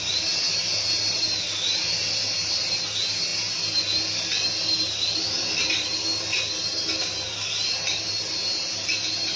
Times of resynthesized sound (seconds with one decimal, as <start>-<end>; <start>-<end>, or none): none